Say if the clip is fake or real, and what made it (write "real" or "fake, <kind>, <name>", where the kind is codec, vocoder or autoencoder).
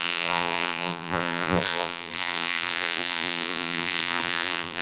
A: fake, vocoder, BigVGAN v2